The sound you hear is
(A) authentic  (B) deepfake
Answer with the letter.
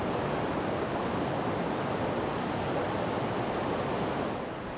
A